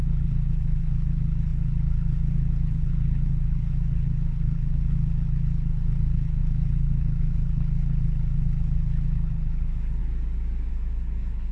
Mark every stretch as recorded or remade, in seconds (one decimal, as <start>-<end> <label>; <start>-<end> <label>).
0.0-10.0 remade; 10.0-10.7 recorded; 10.7-11.5 remade